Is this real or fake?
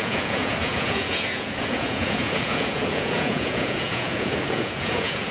fake